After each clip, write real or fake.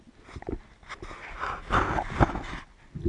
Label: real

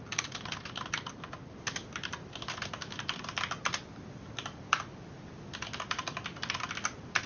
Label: real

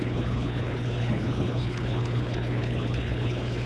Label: fake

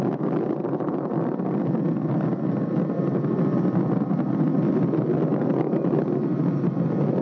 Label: real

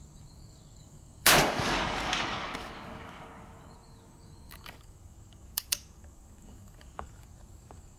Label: fake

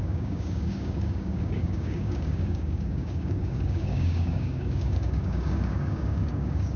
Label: fake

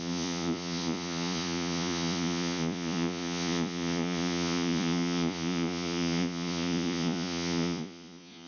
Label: fake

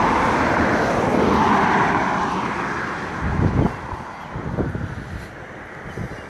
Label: real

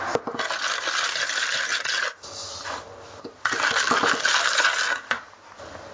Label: real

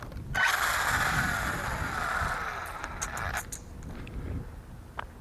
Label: real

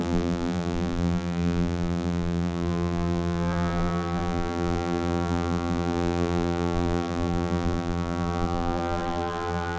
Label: fake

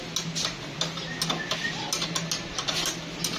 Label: real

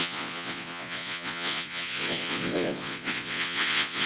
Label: fake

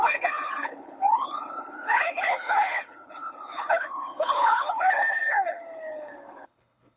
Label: fake